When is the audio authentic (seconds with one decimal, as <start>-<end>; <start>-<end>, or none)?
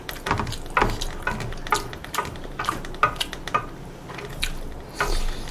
0.0-2.0; 2.6-5.5